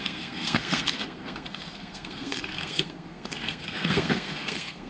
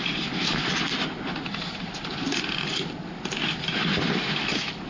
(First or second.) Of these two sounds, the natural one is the second